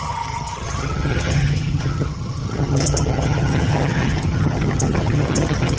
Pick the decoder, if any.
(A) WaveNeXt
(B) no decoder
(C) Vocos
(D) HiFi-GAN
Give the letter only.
D